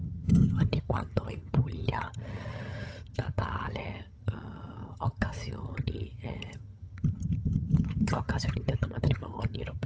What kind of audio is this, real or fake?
fake